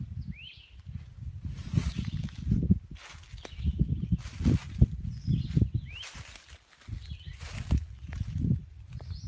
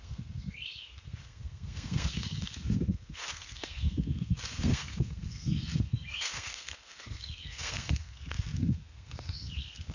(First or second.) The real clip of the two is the first